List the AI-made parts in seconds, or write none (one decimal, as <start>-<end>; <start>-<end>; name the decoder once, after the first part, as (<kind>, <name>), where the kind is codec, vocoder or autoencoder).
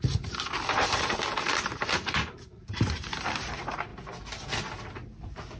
0.0-3.9 (vocoder, BigVGAN v2)